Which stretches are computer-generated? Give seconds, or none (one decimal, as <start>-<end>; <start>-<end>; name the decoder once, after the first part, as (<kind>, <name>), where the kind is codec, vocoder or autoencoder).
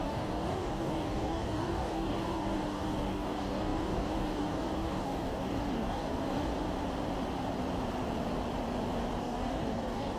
0.0-6.5 (codec, DAC); 9.2-10.2